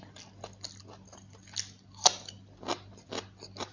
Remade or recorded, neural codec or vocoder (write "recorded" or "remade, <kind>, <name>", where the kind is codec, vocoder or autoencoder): recorded